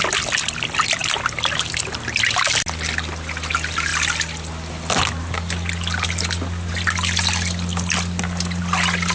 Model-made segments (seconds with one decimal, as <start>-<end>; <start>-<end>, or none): none